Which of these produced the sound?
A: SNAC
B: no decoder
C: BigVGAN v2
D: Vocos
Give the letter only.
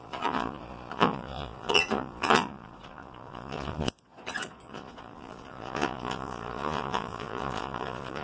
D